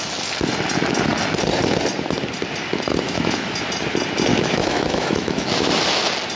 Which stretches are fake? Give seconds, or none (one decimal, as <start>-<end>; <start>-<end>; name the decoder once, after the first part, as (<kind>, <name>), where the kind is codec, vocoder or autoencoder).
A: 2.9-3.6 (autoencoder, DAC-VAE); 4.3-5.7